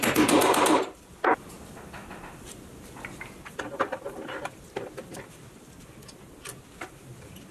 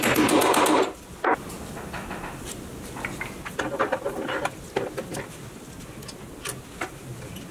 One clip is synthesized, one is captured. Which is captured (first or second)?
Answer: second